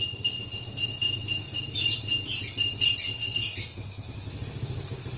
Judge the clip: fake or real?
real